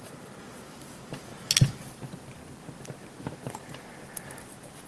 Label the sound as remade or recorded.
remade